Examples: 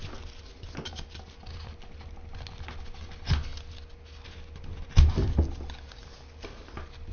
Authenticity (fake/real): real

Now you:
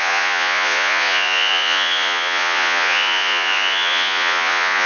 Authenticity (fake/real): fake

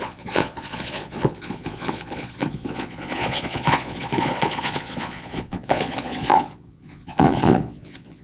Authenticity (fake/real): fake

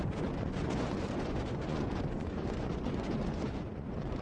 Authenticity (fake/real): fake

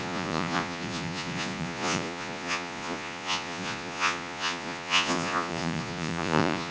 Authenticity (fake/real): fake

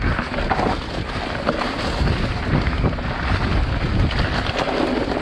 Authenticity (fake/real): real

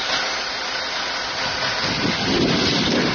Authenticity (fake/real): real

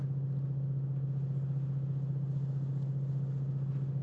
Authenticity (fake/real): real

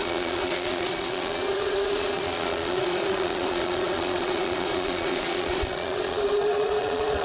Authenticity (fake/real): fake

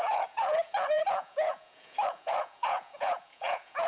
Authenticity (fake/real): fake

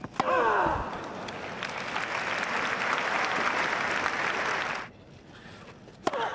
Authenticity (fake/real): real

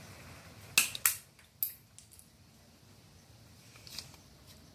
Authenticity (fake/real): real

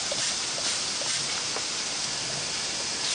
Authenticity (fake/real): real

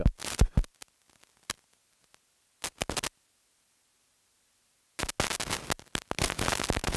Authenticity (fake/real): real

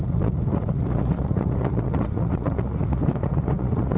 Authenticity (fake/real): fake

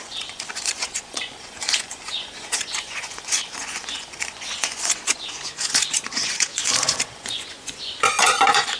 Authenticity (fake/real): fake